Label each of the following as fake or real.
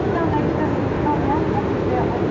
real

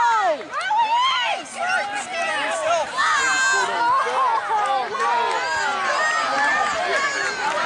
real